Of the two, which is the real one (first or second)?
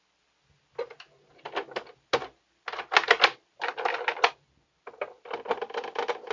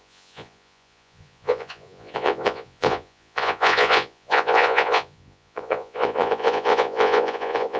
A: first